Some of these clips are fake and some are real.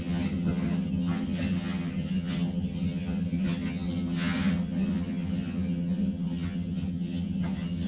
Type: fake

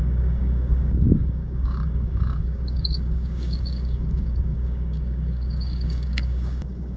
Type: fake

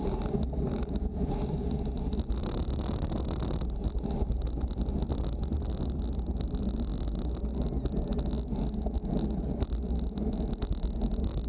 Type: real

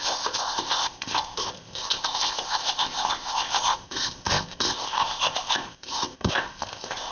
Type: fake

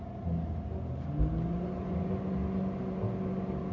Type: real